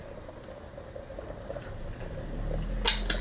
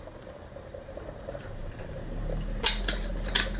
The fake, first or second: second